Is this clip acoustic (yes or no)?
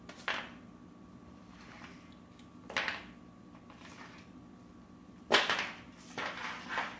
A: yes